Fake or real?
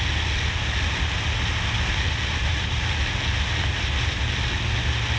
real